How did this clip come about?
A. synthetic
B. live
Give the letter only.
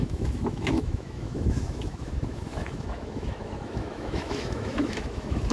A